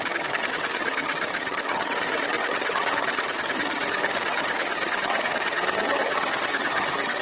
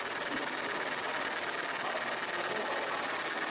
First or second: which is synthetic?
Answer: first